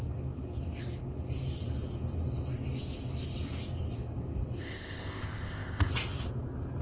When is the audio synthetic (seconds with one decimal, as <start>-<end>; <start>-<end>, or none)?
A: 4.6-5.9